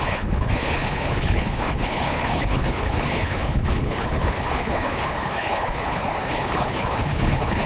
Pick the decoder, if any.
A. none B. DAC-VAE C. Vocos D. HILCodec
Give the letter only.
D